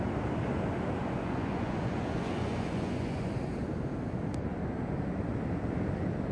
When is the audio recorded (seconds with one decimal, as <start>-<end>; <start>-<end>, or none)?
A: 0.0-1.0; 3.3-6.3

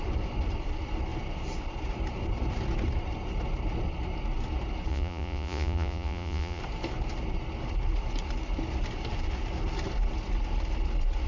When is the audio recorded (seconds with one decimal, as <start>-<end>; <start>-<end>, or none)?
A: 0.0-4.9; 6.6-11.3

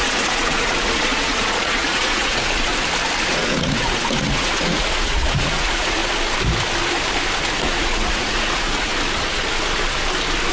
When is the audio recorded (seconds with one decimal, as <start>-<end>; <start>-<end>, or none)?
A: 2.7-3.3; 6.0-7.6; 8.9-10.5

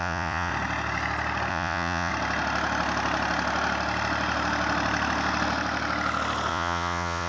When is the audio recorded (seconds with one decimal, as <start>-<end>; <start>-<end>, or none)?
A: 0.5-1.5; 2.1-6.5

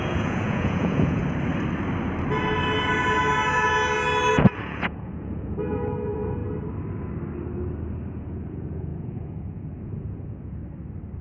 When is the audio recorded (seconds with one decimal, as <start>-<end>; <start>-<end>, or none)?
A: 1.2-4.3; 6.4-8.1; 10.6-11.2

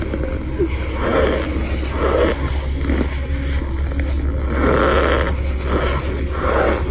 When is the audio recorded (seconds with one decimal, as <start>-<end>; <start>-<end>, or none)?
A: 0.0-6.9

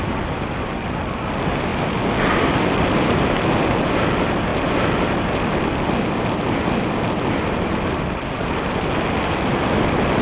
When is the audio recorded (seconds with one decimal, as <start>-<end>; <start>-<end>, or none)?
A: 0.0-10.2

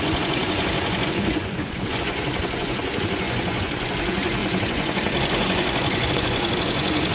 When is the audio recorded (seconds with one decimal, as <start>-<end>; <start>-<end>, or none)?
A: none